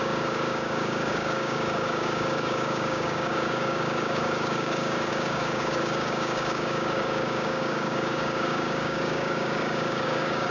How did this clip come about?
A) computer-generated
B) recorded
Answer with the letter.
A